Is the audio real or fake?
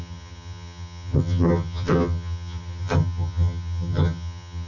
fake